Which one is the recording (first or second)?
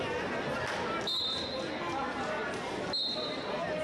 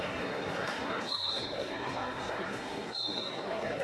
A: first